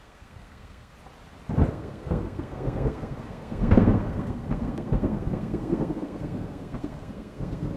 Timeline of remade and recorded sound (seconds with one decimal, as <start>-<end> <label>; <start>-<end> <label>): 0.0-0.9 remade; 0.9-1.7 recorded; 1.7-7.8 remade